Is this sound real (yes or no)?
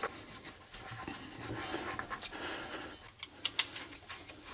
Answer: yes